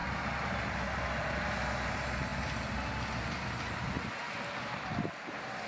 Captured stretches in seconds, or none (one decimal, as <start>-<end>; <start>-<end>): 0.0-5.7